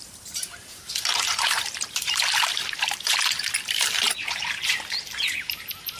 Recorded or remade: remade